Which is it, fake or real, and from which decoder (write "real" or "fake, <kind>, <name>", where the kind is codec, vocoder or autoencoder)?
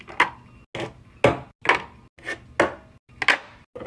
real